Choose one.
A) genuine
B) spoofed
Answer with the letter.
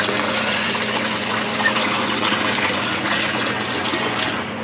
B